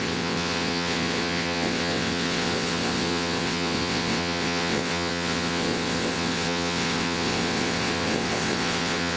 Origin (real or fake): fake